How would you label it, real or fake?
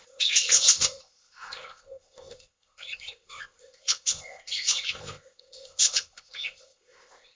fake